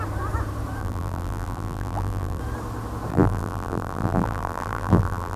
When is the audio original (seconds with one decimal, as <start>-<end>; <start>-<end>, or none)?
0.0-0.8; 2.4-3.1